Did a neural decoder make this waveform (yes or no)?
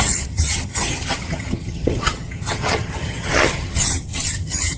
yes